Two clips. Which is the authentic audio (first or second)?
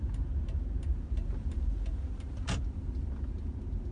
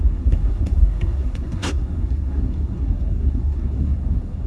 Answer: first